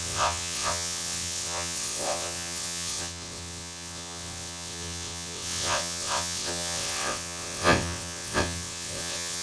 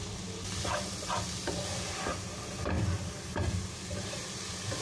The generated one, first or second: first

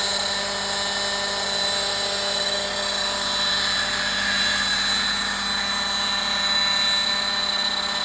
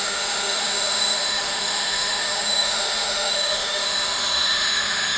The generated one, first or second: second